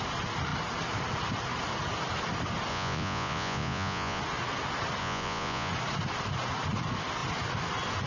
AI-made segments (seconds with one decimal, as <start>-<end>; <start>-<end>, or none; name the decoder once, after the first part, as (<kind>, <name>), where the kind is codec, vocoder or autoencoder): 2.7-4.2 (vocoder, Vocos); 5.0-5.7